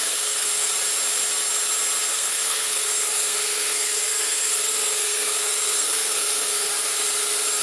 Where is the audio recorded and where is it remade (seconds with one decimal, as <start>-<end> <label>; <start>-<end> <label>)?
0.0-0.7 remade; 0.7-2.1 recorded; 2.1-6.7 remade; 6.7-7.6 recorded